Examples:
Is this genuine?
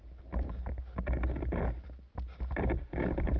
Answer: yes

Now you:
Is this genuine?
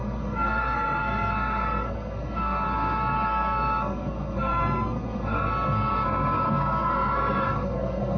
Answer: no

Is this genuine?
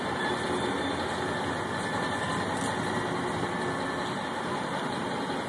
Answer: yes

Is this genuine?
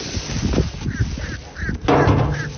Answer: yes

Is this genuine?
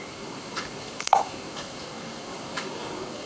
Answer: no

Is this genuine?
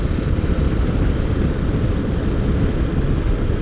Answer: yes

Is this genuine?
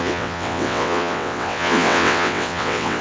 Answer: no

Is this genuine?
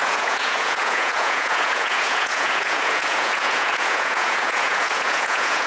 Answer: no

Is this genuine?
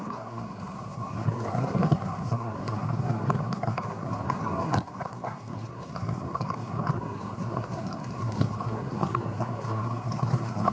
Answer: no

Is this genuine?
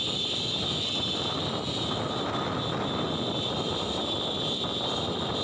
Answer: yes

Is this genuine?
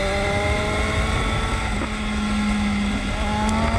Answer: yes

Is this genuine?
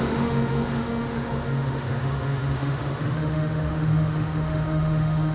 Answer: no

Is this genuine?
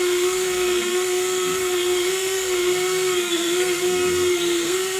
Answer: no